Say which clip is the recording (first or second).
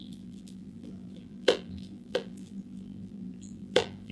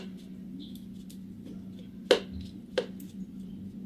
second